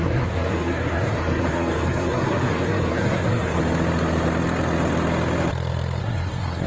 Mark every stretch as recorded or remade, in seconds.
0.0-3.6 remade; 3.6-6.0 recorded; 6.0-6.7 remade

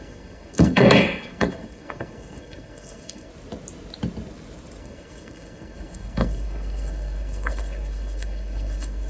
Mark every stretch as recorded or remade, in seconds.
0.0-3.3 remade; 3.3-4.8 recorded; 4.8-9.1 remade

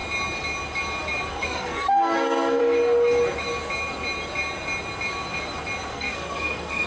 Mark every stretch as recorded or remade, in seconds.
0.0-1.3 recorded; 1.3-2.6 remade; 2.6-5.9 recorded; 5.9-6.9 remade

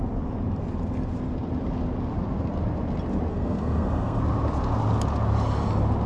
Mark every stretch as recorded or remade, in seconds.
0.0-3.3 recorded; 3.3-4.2 remade; 4.2-6.1 recorded